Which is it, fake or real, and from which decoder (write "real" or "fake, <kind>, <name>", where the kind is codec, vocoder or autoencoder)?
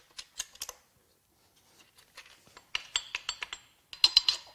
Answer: real